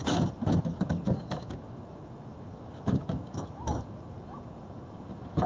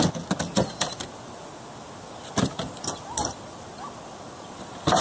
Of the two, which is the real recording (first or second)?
second